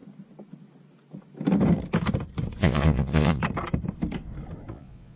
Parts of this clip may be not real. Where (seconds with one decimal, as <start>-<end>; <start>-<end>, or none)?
2.6-3.4; 4.7-5.2